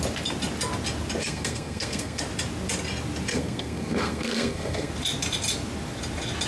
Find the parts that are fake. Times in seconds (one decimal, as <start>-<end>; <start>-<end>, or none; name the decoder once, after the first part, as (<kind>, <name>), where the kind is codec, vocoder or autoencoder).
1.2-2.2 (codec, SNAC); 3.3-4.9